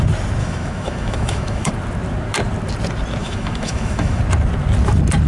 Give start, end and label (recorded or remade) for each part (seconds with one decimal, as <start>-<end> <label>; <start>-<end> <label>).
0.0-0.4 recorded; 0.4-1.7 remade; 1.7-3.2 recorded; 3.2-4.2 remade; 4.2-5.3 recorded